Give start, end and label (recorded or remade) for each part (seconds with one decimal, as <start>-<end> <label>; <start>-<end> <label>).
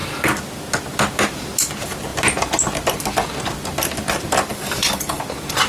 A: 0.0-4.5 recorded; 4.5-5.2 remade; 5.2-5.7 recorded